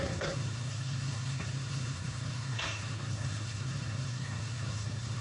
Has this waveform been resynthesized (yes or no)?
yes